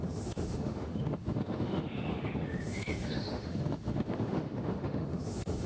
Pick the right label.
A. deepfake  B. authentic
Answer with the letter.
A